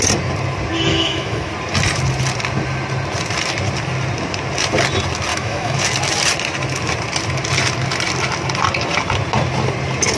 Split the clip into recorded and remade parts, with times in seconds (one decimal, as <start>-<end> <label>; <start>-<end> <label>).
0.0-0.9 recorded; 0.9-1.5 remade; 1.5-5.3 recorded; 5.3-5.8 remade; 5.8-10.2 recorded